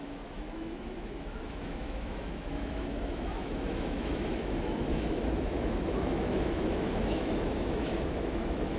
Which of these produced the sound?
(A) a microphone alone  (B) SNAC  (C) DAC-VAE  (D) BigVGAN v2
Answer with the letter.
C